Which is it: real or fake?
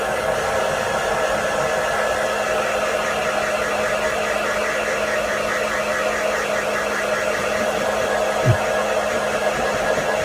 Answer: real